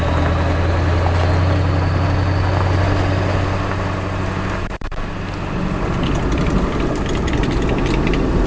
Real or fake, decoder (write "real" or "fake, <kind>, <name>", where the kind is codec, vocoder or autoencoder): real